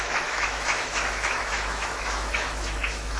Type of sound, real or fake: fake